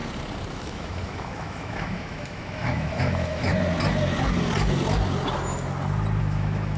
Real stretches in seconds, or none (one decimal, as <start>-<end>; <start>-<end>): 0.0-0.6; 3.5-6.2